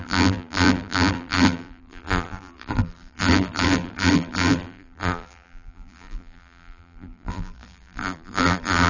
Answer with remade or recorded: remade